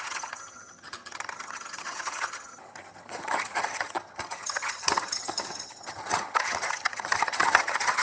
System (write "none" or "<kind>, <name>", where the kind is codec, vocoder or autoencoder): vocoder, HiFi-GAN